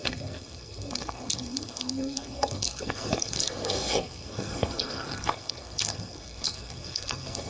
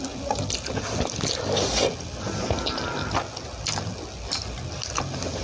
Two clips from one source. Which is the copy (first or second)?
first